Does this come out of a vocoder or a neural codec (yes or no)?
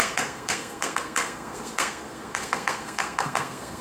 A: yes